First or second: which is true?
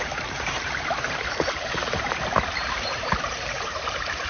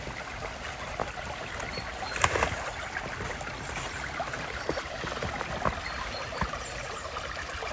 second